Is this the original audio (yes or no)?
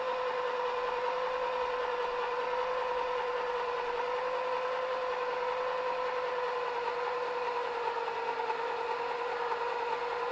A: yes